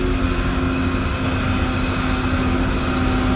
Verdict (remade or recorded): recorded